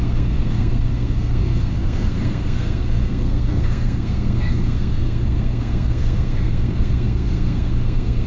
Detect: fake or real fake